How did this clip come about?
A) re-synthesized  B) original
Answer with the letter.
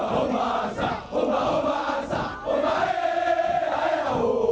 B